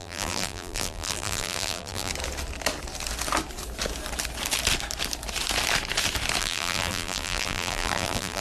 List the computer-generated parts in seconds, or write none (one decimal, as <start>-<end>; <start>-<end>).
0.0-2.1; 6.4-8.4